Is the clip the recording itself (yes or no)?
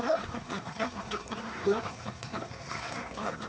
no